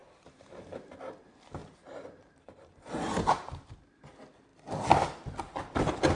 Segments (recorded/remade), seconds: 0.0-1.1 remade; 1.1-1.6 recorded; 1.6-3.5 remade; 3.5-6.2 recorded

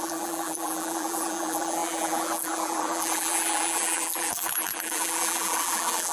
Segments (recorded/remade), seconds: 0.0-6.1 remade

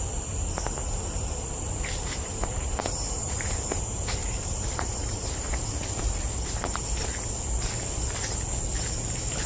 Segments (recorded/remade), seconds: 0.0-0.8 recorded; 0.8-5.8 remade; 5.8-9.5 recorded

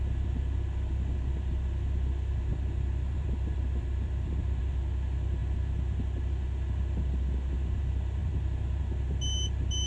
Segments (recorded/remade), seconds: 0.0-2.5 recorded; 2.5-4.6 remade; 4.6-8.2 recorded; 8.2-8.8 remade; 8.8-9.9 recorded

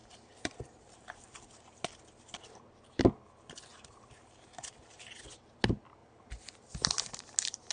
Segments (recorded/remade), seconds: 0.0-1.8 remade; 1.8-3.7 recorded; 3.7-5.2 remade; 5.2-6.0 recorded; 6.0-6.7 remade; 6.7-7.7 recorded

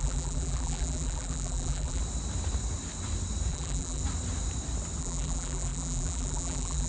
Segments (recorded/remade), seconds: 0.0-2.0 remade; 2.0-3.5 recorded; 3.5-4.0 remade; 4.0-5.0 recorded; 5.0-6.9 remade